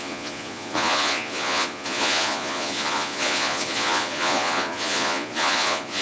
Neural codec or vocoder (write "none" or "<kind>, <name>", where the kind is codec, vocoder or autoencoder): vocoder, Vocos